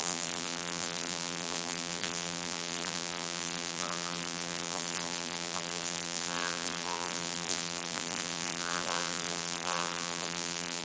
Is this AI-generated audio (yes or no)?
yes